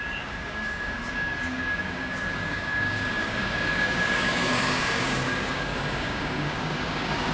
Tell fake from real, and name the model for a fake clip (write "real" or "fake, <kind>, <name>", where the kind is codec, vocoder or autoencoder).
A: fake, codec, DAC